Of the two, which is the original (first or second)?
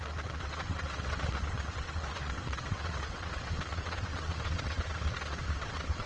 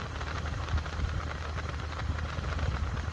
second